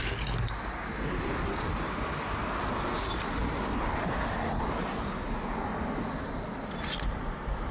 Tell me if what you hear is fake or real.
real